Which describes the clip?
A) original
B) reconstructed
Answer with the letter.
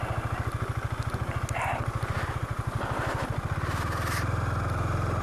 A